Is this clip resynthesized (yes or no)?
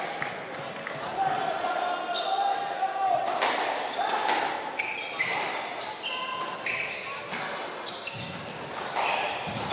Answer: no